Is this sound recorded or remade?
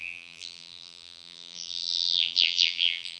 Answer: remade